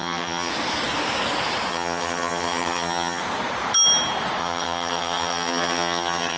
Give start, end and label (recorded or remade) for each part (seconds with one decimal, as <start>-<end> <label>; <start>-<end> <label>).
0.0-0.5 remade; 0.5-1.7 recorded; 1.7-3.2 remade; 3.2-4.4 recorded; 4.4-6.4 remade